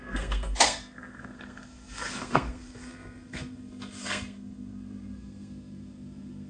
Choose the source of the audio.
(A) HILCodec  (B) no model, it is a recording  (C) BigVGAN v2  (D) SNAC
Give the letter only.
D